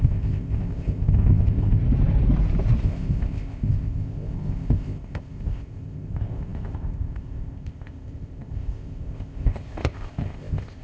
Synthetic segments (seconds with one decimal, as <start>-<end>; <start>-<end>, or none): 0.0-1.8; 2.8-10.8